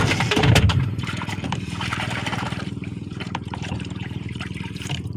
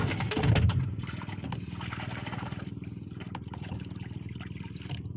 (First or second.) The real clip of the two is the second